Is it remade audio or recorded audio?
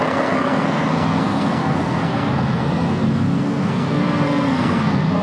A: remade